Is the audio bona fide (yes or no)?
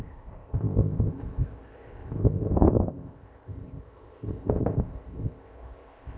no